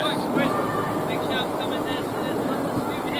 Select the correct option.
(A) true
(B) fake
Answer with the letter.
A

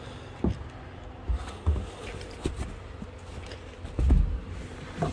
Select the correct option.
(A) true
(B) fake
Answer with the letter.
A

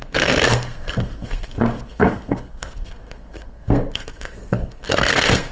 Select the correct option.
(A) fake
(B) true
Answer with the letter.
A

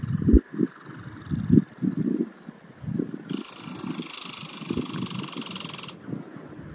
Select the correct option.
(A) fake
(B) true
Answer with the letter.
B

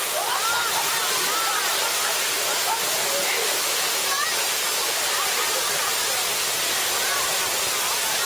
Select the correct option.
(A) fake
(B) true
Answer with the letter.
B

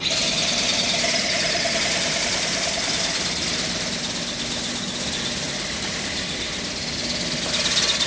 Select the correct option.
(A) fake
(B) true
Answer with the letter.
B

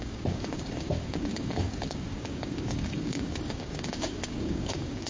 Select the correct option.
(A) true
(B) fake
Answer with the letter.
B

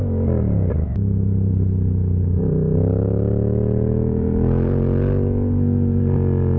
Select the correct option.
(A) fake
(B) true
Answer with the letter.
B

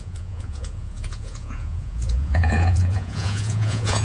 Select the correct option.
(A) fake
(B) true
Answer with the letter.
A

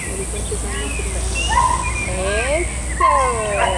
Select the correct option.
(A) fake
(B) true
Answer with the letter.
B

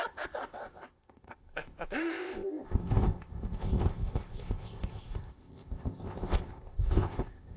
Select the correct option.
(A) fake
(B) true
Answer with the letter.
A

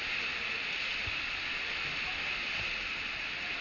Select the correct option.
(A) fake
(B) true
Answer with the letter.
B